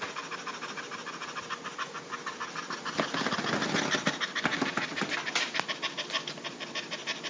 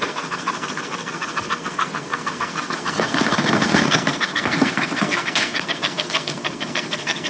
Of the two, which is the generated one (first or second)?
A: second